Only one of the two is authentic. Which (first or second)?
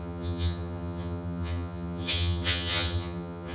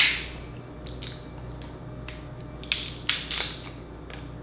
second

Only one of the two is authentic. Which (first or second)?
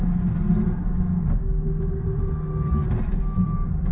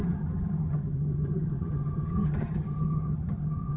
first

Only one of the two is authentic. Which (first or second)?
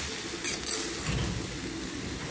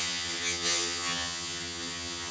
first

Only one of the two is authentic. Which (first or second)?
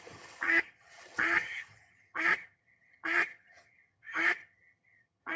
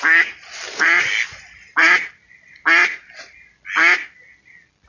second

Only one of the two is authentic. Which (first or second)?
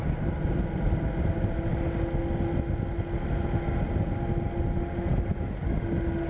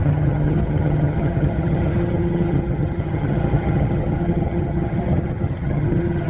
first